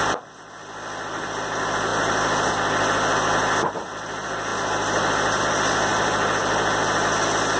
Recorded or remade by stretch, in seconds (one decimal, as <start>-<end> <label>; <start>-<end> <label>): 0.0-1.9 recorded; 1.9-2.5 remade; 2.5-4.5 recorded; 4.5-5.4 remade; 5.4-7.6 recorded